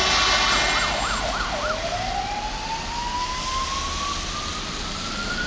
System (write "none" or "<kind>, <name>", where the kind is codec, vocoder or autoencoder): none